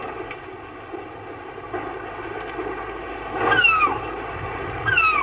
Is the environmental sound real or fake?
real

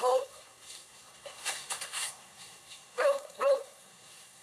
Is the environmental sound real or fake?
fake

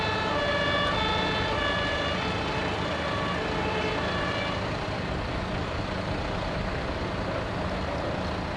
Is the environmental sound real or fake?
real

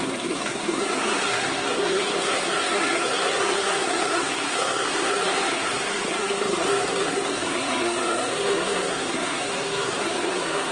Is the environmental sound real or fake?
fake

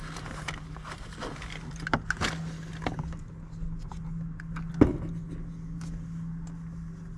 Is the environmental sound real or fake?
real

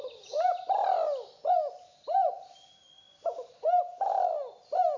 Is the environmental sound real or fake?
real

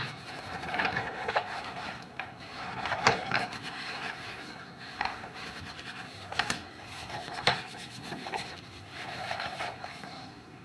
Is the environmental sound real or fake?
fake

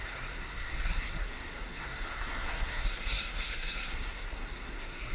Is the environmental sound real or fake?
fake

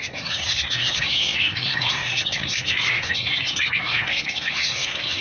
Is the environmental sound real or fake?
fake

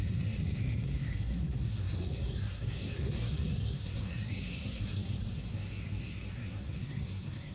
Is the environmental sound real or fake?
fake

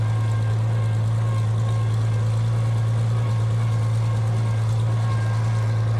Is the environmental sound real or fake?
real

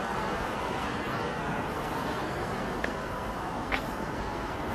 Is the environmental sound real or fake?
fake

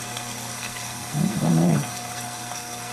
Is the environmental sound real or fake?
fake